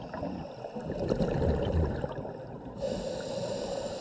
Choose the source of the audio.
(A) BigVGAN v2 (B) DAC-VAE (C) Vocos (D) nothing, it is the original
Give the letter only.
D